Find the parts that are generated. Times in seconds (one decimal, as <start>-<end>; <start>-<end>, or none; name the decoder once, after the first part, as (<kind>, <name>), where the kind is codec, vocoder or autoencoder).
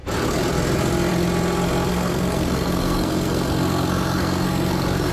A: 1.9-5.1 (codec, SNAC)